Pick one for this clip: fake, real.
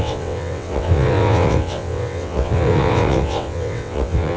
fake